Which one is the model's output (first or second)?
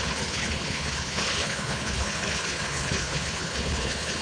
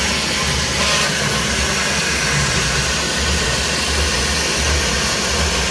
first